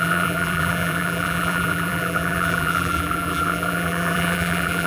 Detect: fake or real fake